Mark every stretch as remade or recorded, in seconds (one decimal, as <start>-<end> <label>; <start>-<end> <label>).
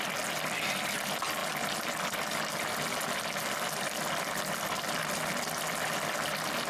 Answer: 0.0-6.7 recorded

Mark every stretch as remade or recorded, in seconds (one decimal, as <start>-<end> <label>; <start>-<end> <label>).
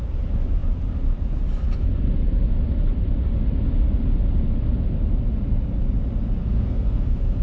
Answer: 0.0-6.4 recorded; 6.4-7.4 remade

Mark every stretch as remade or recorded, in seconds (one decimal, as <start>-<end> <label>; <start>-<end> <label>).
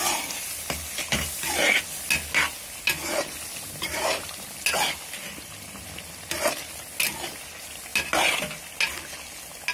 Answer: 0.0-9.7 recorded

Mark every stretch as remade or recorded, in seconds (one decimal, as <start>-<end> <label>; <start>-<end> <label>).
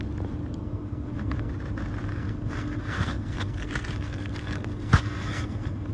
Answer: 0.0-0.6 recorded; 0.6-1.5 remade; 1.5-2.1 recorded; 2.1-5.9 remade